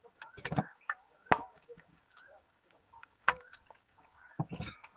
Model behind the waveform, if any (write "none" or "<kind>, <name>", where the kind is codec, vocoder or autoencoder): codec, DAC